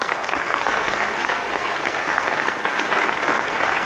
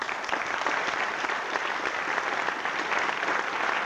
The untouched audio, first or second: second